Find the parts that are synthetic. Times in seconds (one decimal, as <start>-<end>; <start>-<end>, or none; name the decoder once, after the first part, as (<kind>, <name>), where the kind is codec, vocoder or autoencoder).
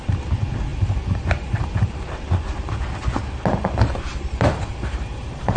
0.7-2.1 (vocoder, BigVGAN v2); 4.1-5.6